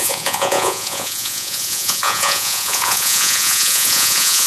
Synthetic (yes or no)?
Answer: yes